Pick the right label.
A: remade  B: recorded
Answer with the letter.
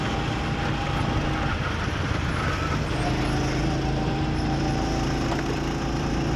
B